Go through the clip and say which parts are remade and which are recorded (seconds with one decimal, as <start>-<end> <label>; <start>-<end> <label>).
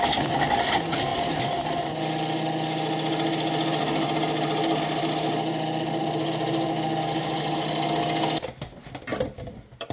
0.0-9.9 recorded